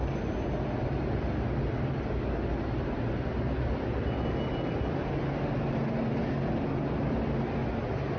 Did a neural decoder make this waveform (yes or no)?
no